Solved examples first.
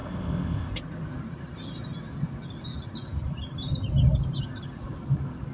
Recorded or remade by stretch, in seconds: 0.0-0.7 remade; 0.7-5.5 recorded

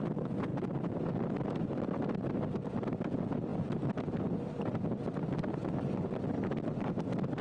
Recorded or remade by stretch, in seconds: 0.0-7.4 recorded